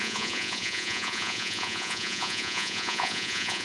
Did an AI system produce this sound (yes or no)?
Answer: yes